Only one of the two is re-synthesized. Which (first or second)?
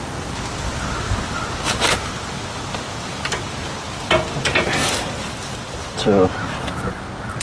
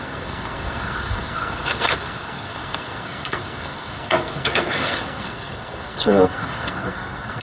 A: second